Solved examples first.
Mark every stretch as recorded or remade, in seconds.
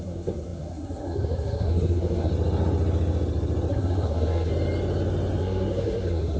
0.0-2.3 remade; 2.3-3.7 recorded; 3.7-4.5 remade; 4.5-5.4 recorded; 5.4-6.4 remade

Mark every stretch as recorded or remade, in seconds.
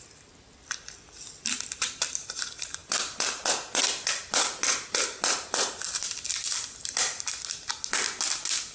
0.0-8.7 recorded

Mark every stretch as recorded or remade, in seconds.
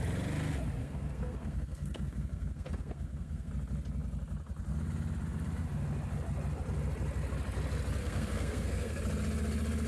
0.0-0.8 recorded; 0.8-3.5 remade; 3.5-8.0 recorded; 8.0-9.0 remade; 9.0-9.9 recorded